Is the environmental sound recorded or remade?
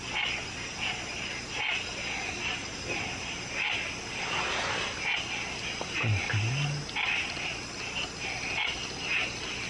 recorded